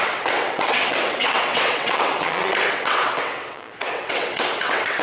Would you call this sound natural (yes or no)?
no